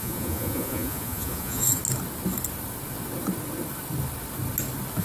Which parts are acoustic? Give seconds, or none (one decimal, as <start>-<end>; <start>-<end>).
1.8-5.0